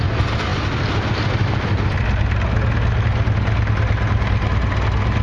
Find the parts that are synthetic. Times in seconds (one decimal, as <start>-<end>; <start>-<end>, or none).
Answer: none